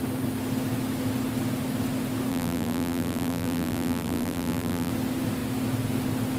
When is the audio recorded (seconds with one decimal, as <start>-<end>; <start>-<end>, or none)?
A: 0.0-2.3; 4.9-6.4

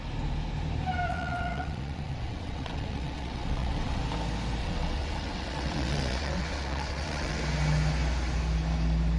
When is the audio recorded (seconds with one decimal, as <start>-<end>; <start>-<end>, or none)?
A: 0.0-1.1; 4.0-4.6; 7.4-9.2

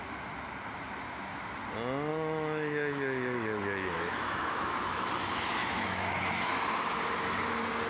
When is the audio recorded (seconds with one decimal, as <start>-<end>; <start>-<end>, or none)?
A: 0.0-2.1; 5.1-5.6; 6.5-7.9

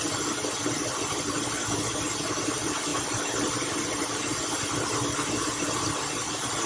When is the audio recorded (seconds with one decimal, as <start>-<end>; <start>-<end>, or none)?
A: 0.0-6.7

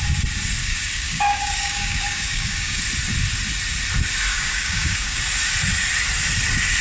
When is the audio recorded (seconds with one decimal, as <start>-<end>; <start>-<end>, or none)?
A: 0.0-0.6; 2.8-4.3; 5.2-6.8

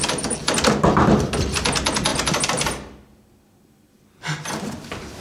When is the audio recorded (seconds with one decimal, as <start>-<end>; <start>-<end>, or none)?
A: 0.0-5.2